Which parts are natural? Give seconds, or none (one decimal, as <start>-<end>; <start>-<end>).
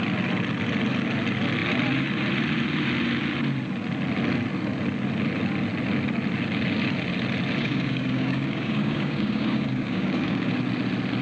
0.0-7.6; 10.5-11.2